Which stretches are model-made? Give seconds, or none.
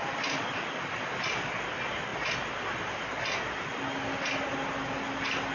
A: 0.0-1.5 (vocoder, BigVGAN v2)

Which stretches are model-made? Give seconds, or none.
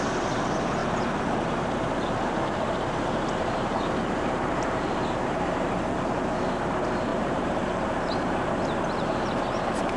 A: 0.8-5.5 (vocoder, BigVGAN v2); 7.1-8.5